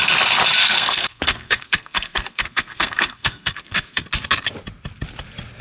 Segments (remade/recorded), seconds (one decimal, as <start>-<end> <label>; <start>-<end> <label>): 0.0-0.6 recorded; 0.6-4.0 remade; 4.0-5.6 recorded